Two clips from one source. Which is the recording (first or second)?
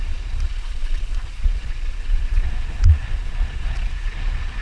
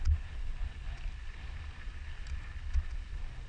second